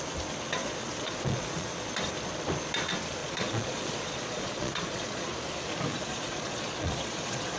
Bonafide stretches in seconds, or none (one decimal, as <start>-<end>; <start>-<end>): 0.0-0.6; 1.9-3.2; 5.3-5.9